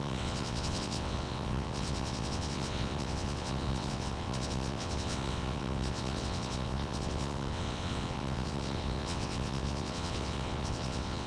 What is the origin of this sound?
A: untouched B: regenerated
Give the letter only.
B